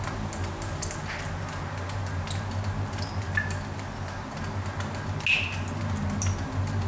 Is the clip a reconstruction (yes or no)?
no